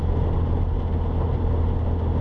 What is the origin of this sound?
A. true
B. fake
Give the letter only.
A